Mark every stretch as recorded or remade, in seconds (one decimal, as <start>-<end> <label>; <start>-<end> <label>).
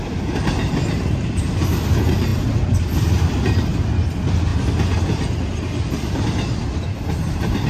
0.0-7.7 recorded